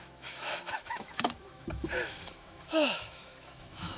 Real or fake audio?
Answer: fake